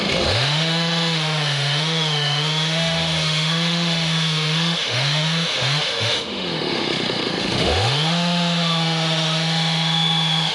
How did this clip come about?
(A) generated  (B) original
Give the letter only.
A